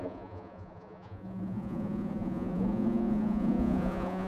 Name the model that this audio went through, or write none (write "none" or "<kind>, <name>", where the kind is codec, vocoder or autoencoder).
vocoder, Vocos